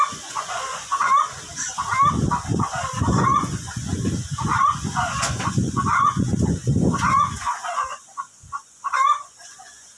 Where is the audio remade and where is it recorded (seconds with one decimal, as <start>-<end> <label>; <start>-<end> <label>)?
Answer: 0.0-1.1 remade; 1.1-2.1 recorded; 2.1-10.0 remade